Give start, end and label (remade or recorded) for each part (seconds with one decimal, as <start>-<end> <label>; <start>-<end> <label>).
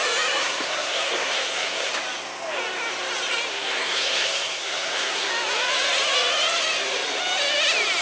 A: 0.0-0.4 recorded; 0.4-1.9 remade; 1.9-3.5 recorded; 3.5-5.3 remade; 5.3-8.0 recorded